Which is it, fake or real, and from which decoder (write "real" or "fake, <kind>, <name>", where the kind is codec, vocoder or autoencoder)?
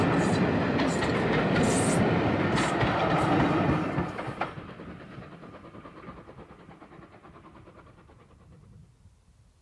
real